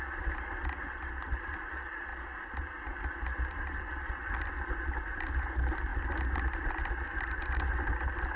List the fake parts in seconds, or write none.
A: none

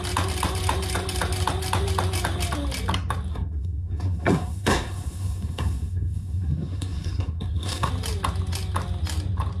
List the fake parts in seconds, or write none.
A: 3.3-7.9 (codec, SNAC)

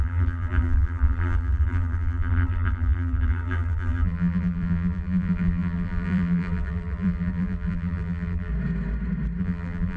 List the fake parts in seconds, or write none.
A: 0.0-8.5 (vocoder, BigVGAN v2); 9.4-10.0

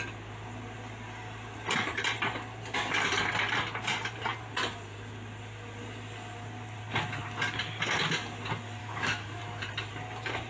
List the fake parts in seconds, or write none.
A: 8.8-9.4 (autoencoder, DAC-VAE)

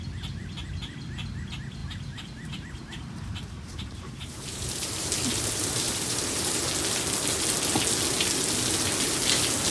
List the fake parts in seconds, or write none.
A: 1.8-6.6 (vocoder, BigVGAN v2)

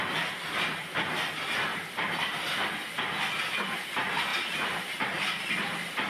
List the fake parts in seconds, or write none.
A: 1.7-3.8 (vocoder, BigVGAN v2); 4.3-5.4